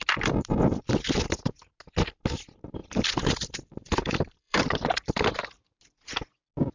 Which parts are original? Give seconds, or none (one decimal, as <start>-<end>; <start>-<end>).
0.0-2.8; 5.5-6.7